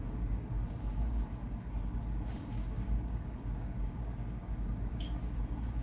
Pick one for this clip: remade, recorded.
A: remade